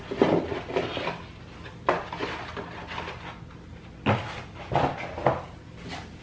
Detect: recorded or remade recorded